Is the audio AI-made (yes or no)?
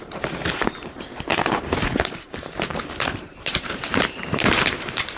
yes